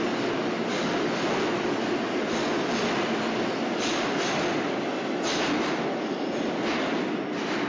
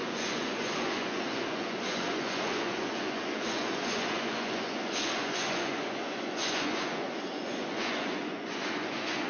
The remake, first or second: second